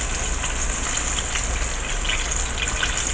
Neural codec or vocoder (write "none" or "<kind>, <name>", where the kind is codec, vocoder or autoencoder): none